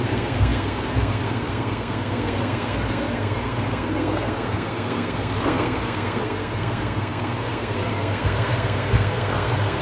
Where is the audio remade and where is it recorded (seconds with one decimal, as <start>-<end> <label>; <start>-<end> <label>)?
0.0-9.8 remade